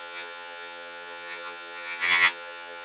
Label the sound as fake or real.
fake